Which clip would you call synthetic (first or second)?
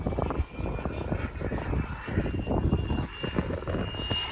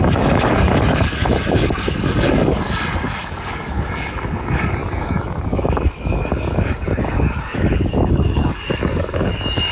second